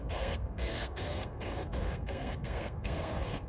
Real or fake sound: fake